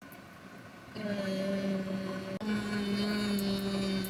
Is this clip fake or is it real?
real